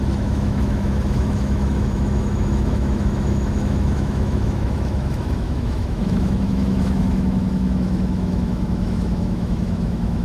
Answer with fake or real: fake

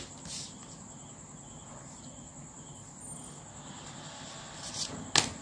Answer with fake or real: real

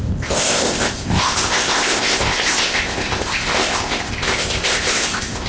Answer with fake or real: fake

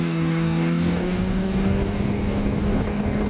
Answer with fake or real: fake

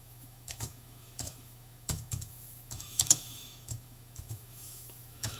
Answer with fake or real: fake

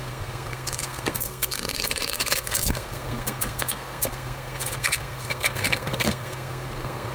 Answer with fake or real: fake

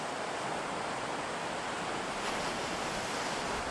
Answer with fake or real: real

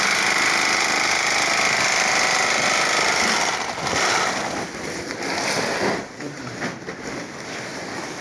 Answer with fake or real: real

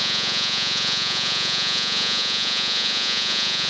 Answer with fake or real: fake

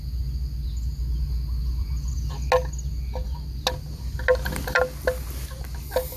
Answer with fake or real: real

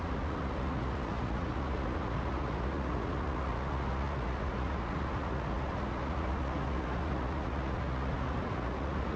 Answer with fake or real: fake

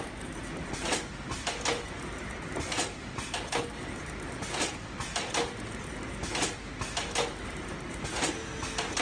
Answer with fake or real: real